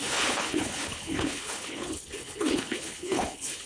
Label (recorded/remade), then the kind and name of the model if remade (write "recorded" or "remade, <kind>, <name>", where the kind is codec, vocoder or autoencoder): remade, codec, HILCodec